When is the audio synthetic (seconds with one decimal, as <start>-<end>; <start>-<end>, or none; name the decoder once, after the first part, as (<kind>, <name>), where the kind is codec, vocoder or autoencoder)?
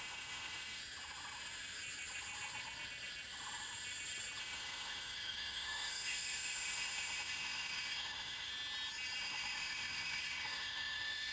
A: 0.0-0.8 (autoencoder, DAC-VAE); 4.4-8.5; 9.2-11.3